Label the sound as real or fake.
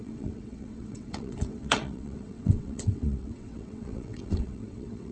fake